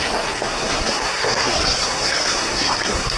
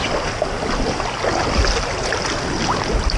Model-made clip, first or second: first